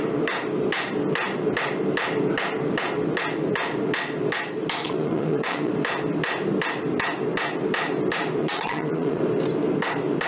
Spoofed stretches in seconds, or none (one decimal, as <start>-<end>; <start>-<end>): 4.8-5.7; 8.4-9.2